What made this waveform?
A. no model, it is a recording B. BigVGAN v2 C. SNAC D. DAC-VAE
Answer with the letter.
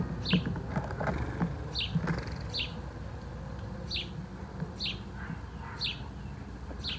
A